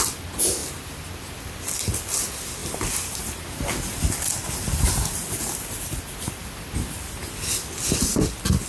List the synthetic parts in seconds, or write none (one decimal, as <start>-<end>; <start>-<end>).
none

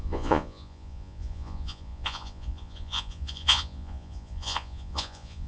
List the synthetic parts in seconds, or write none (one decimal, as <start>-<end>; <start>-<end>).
0.0-5.5

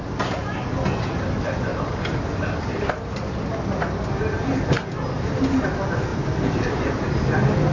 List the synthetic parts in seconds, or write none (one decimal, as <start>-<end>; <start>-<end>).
none

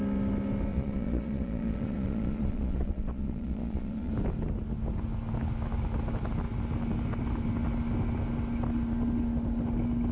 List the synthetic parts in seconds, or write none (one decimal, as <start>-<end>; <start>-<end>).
0.7-4.1